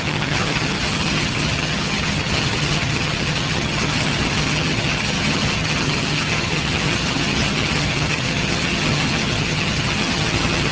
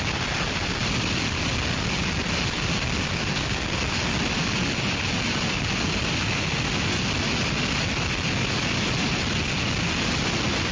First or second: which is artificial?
first